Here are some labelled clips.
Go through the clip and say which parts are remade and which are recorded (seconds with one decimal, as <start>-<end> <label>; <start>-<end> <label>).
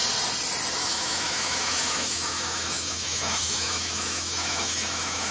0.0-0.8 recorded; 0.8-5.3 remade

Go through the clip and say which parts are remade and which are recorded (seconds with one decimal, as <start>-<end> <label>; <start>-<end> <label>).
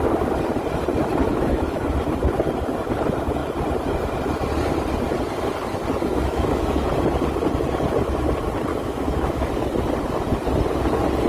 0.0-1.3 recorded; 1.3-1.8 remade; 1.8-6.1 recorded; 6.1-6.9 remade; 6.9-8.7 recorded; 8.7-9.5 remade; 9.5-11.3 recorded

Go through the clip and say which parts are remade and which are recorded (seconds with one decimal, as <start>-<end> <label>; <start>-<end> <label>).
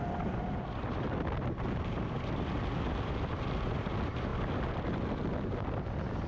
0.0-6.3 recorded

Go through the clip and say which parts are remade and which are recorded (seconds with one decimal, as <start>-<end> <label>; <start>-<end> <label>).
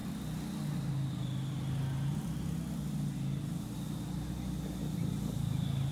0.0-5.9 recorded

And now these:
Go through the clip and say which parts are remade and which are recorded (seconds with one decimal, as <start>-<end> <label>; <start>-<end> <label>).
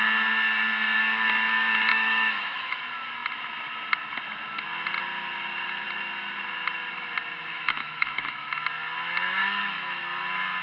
0.0-1.9 recorded; 1.9-2.8 remade; 2.8-7.5 recorded; 7.5-8.5 remade; 8.5-9.4 recorded; 9.4-10.0 remade; 10.0-10.6 recorded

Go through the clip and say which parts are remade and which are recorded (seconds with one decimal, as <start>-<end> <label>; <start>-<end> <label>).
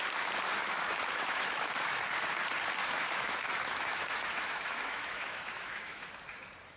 0.0-0.6 recorded; 0.6-2.0 remade; 2.0-2.8 recorded; 2.8-6.1 remade; 6.1-6.8 recorded